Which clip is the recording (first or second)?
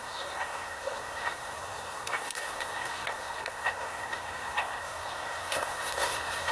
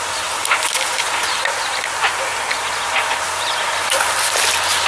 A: second